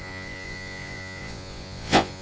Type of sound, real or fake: fake